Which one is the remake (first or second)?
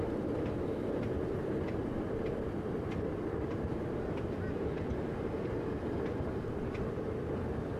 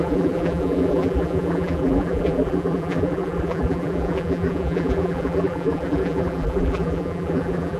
second